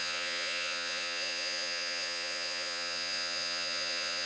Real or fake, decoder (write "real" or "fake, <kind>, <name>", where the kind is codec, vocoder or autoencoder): fake, vocoder, Vocos